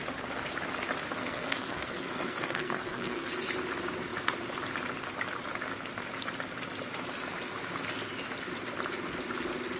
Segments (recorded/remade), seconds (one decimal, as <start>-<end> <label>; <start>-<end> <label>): 0.0-1.2 recorded; 1.2-3.3 remade; 3.3-9.8 recorded